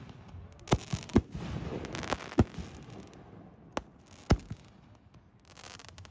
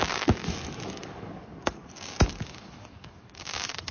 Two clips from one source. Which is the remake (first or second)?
second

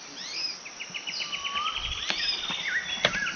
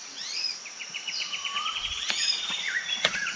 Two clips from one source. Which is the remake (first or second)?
second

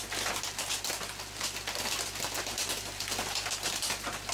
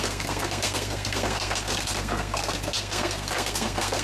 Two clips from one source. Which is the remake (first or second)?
second